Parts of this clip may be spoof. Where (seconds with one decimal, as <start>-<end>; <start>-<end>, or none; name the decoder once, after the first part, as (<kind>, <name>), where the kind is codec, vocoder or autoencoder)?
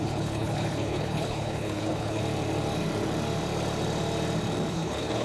0.0-2.2 (codec, HILCodec); 4.7-5.2